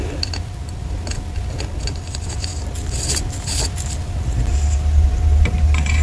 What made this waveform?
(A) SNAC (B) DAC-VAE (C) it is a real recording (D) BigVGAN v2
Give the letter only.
C